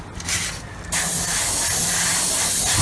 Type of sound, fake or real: real